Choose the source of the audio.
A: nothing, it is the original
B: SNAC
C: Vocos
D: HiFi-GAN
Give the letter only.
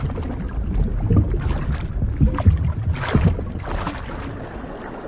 A